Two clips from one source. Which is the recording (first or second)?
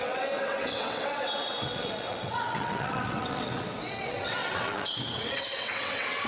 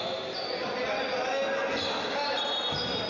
second